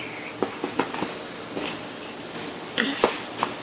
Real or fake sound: real